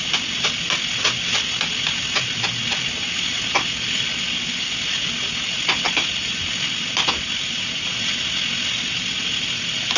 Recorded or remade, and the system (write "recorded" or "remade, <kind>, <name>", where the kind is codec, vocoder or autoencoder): recorded